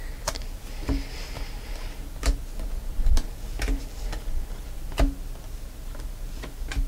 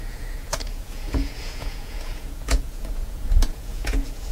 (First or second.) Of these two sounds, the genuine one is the first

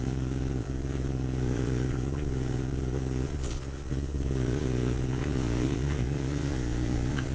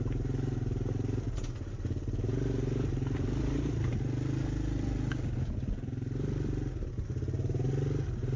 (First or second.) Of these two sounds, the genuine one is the second